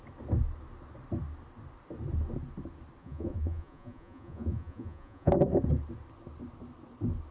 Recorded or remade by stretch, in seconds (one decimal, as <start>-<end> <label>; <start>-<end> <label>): 0.0-3.0 recorded; 3.0-5.3 remade; 5.3-7.3 recorded